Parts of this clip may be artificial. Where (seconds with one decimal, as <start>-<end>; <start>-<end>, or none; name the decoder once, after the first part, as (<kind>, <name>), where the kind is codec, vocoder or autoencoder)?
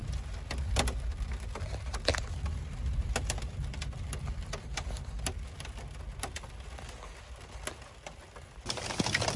none